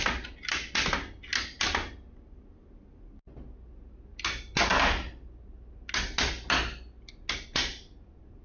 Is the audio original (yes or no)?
yes